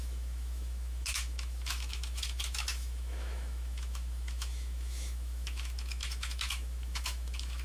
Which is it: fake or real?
fake